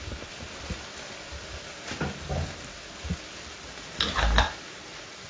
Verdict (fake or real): real